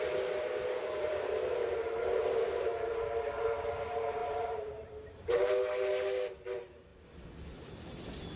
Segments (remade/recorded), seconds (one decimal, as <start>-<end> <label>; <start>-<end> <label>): 0.0-0.8 recorded; 0.8-2.9 remade; 2.9-4.2 recorded; 4.2-5.5 remade; 5.5-8.4 recorded